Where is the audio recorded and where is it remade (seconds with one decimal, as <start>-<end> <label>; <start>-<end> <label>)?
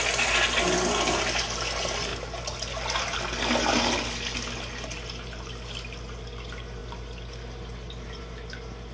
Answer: 0.0-8.9 recorded